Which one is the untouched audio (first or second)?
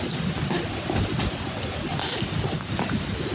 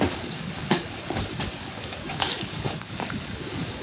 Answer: first